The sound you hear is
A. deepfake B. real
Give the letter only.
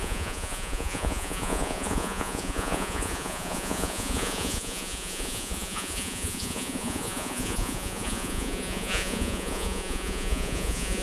A